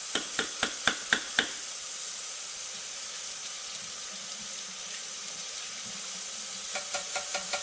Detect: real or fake fake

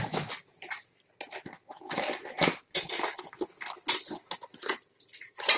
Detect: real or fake real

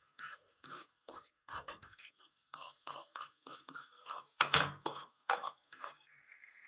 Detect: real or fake fake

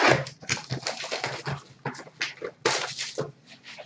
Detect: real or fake real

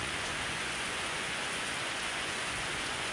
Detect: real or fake fake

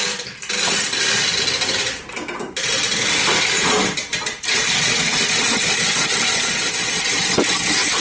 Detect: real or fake real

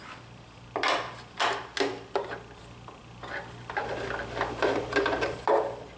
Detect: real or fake real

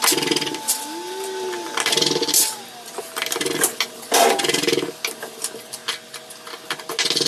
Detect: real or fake real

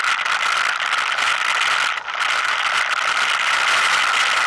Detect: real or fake real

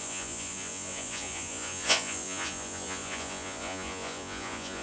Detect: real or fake fake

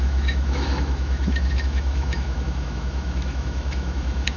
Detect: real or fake fake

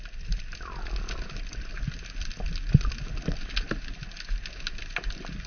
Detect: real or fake real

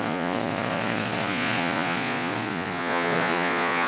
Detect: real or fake fake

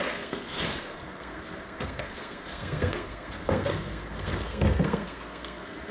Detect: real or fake fake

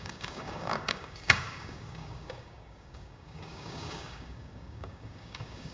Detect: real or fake fake